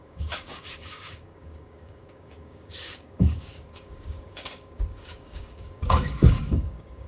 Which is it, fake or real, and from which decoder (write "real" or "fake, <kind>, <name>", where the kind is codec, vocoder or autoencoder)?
fake, codec, DAC